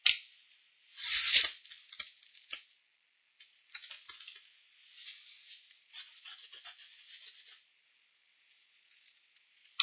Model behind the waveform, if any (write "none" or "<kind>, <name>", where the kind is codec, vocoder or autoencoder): none